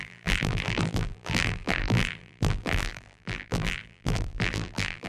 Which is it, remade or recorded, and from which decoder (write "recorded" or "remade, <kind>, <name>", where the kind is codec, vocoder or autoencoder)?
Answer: remade, vocoder, BigVGAN v2